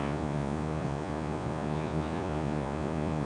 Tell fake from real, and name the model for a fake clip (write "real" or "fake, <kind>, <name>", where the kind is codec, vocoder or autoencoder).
fake, vocoder, Vocos